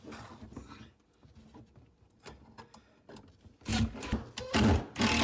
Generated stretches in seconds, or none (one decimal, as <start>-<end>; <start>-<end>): none